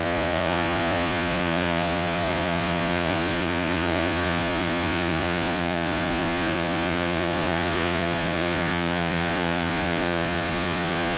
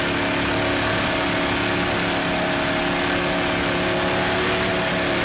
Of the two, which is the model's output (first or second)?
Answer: first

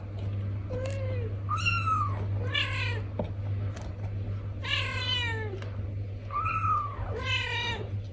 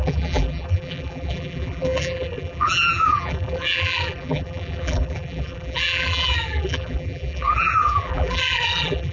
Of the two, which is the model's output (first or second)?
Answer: second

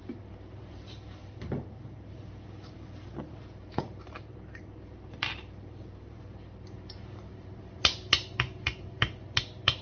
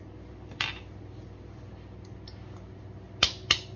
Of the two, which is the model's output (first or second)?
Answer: first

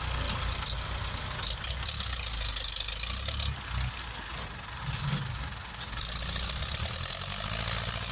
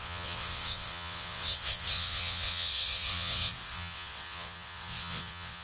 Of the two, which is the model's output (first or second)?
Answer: second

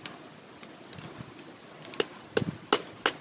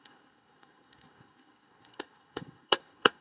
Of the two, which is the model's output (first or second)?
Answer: second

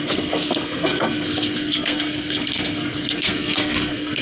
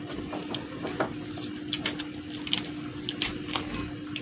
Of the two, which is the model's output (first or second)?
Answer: first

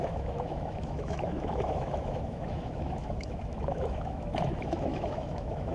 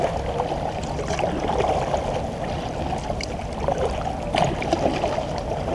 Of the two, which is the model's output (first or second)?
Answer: first